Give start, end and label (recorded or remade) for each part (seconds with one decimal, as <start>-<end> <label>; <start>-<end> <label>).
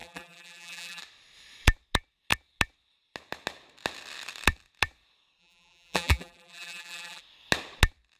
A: 0.0-1.0 remade; 1.0-5.4 recorded; 5.4-7.2 remade; 7.2-8.2 recorded